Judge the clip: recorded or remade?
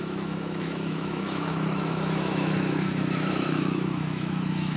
remade